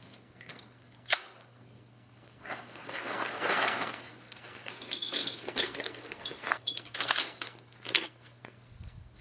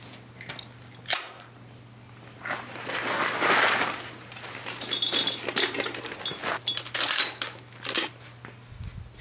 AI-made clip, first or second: first